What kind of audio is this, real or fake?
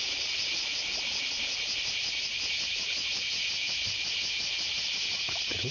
real